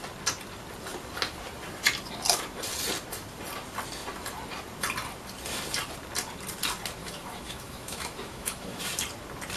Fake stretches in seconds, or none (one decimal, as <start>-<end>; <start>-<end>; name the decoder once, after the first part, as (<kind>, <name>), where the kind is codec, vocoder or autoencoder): 7.0-8.8 (autoencoder, DAC-VAE)